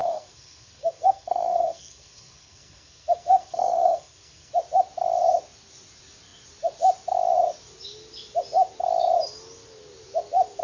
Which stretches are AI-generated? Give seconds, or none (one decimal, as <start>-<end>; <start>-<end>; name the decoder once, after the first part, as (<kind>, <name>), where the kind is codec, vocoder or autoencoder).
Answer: 0.0-4.5 (codec, SNAC)